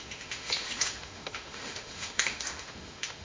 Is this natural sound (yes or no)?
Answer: no